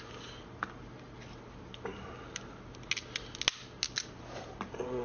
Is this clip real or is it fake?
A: real